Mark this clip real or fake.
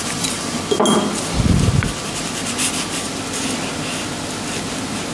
real